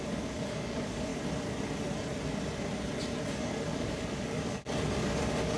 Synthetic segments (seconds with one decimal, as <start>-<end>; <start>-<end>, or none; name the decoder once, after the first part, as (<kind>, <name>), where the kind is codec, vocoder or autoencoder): 0.0-1.1 (codec, DAC); 3.3-5.6